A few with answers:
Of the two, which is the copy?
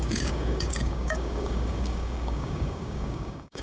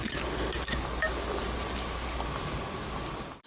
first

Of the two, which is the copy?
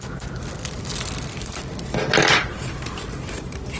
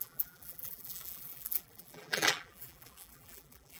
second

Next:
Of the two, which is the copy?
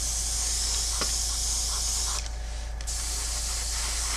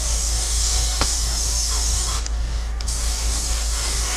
second